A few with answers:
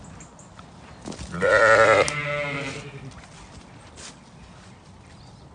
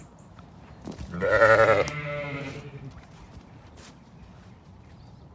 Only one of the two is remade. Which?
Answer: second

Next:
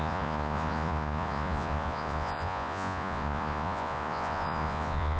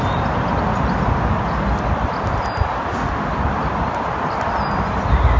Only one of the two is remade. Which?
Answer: first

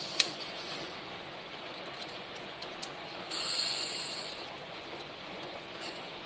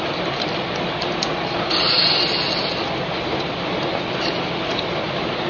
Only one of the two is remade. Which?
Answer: first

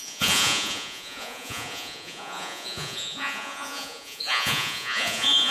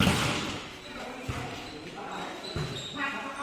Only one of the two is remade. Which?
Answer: first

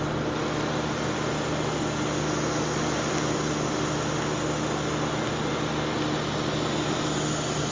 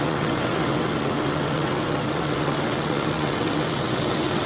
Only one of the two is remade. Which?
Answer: second